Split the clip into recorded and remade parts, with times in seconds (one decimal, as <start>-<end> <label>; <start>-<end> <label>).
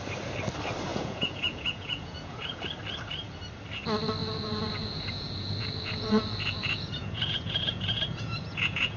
0.0-0.9 recorded; 0.9-2.6 remade; 2.6-4.2 recorded; 4.2-9.0 remade